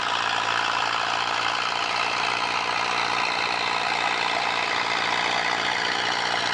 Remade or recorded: remade